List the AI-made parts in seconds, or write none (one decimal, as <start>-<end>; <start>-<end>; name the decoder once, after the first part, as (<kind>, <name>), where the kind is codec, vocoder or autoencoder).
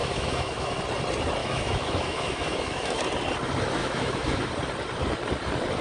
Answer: 0.0-0.8 (autoencoder, DAC-VAE); 1.4-3.0; 3.8-4.5